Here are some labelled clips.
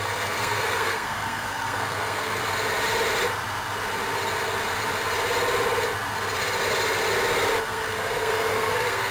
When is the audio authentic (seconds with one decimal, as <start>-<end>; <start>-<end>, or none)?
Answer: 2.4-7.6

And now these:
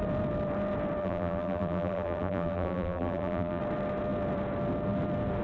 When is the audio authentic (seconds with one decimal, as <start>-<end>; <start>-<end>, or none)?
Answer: 0.0-1.0; 3.6-5.4

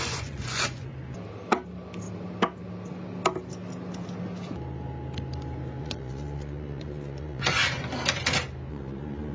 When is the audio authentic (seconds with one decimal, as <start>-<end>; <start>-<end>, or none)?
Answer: 0.9-5.8; 7.6-8.7

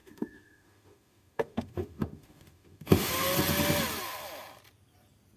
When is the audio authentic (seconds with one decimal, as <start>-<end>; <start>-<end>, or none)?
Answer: 3.1-5.4

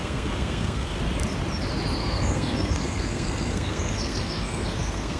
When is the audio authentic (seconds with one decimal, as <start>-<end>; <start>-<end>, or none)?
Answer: 1.0-2.0